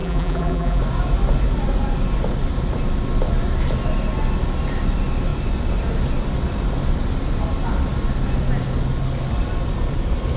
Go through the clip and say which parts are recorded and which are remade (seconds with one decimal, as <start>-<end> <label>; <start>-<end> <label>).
0.0-0.8 remade; 0.8-10.4 recorded